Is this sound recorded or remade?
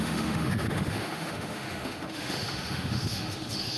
remade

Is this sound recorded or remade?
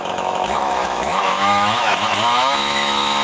remade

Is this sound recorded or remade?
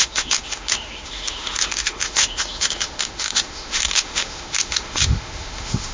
remade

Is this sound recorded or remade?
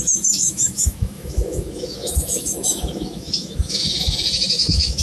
remade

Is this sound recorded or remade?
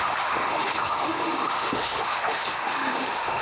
remade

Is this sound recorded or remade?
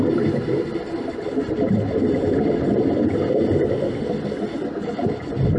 recorded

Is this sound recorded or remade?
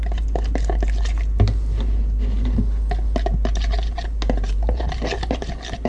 recorded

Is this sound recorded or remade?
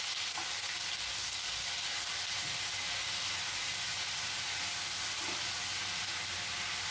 recorded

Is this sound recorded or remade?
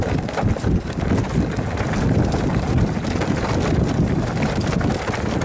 recorded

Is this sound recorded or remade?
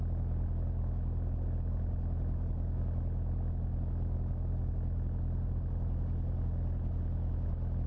recorded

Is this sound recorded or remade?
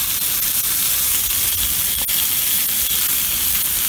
recorded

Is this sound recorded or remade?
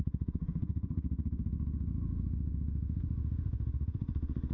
remade